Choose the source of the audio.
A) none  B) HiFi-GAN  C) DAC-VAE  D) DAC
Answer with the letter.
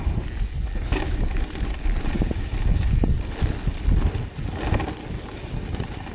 A